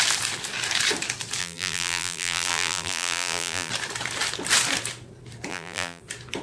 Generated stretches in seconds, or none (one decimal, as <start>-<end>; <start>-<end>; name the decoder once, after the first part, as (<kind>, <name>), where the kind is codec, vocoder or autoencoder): 1.4-3.7 (vocoder, BigVGAN v2); 5.5-6.0